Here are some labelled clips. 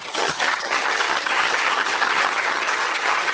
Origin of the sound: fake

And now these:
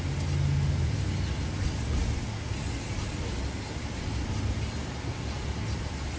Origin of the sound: real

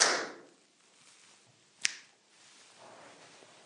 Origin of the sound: real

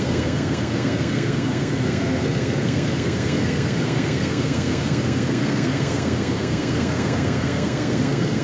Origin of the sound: fake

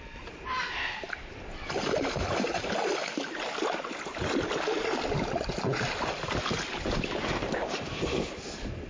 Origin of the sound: real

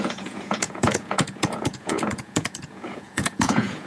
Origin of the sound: fake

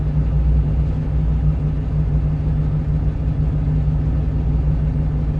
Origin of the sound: real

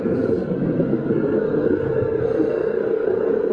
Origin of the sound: fake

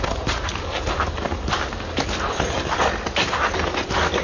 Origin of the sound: real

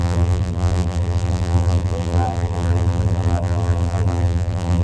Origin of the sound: fake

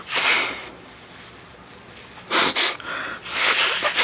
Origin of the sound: real